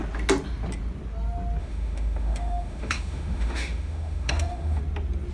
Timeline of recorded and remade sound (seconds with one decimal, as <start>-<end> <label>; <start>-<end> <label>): 0.0-1.6 recorded; 1.6-4.8 remade; 4.8-5.3 recorded

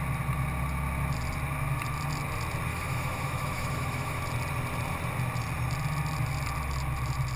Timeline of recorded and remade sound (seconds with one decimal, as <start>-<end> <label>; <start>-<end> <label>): 0.0-2.7 recorded; 2.7-4.2 remade; 4.2-7.4 recorded